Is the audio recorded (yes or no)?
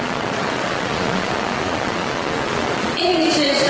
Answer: no